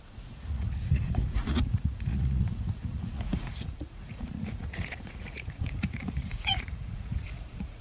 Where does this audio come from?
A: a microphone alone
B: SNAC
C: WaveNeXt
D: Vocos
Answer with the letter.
D